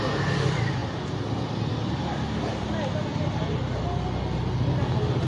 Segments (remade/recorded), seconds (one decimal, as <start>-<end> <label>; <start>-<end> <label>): 0.0-5.3 recorded